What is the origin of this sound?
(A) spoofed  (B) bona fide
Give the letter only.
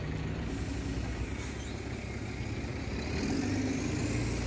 B